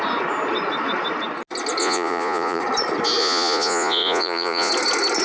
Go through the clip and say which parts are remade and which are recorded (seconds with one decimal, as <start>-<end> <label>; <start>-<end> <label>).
0.0-1.8 recorded; 1.8-2.6 remade; 2.6-3.2 recorded; 3.2-4.7 remade; 4.7-5.2 recorded